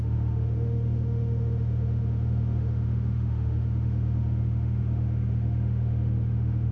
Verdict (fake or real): fake